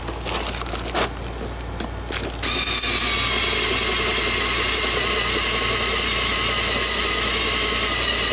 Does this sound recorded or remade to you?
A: recorded